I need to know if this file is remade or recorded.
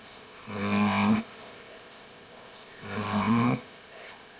remade